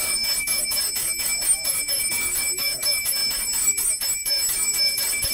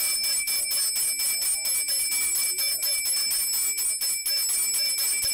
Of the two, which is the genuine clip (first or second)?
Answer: second